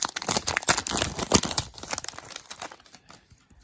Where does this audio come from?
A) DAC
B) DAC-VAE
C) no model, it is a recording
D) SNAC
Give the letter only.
C